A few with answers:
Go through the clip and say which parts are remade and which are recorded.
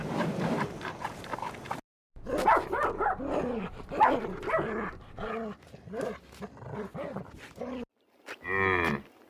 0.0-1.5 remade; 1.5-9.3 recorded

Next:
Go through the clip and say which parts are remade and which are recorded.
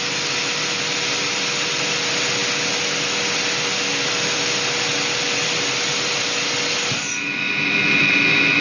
0.0-8.6 recorded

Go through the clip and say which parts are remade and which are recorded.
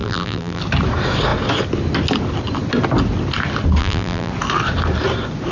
0.0-0.6 remade; 0.6-3.8 recorded; 3.8-4.3 remade; 4.3-5.5 recorded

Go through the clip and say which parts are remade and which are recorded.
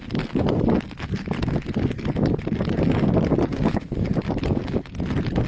0.0-5.5 recorded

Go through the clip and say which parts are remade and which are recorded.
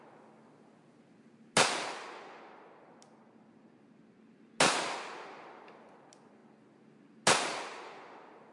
0.0-8.5 recorded